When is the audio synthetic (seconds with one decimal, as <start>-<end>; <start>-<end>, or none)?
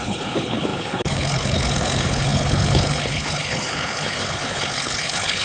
0.0-5.4